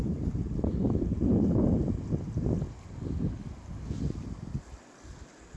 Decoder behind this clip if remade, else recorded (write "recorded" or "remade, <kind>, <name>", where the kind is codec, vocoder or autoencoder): recorded